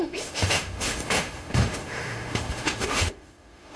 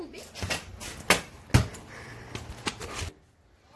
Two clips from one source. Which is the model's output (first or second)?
first